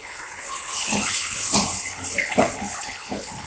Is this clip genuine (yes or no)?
no